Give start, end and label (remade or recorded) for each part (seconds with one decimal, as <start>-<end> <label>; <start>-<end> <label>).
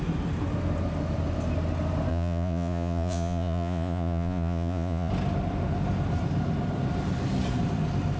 0.0-2.1 recorded; 2.1-5.1 remade; 5.1-8.2 recorded